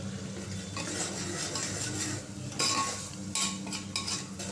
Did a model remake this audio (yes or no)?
no